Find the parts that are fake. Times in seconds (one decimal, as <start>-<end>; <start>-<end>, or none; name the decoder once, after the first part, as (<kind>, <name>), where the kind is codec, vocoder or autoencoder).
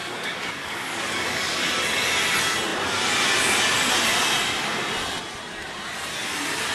0.0-1.7 (codec, DAC)